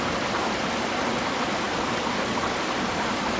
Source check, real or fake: real